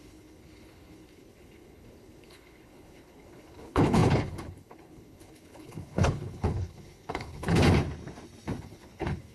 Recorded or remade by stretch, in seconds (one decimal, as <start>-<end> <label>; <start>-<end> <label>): 0.0-7.6 remade; 7.6-8.6 recorded; 8.6-9.3 remade